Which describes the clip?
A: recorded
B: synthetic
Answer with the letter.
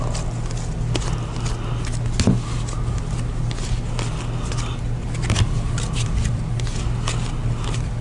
A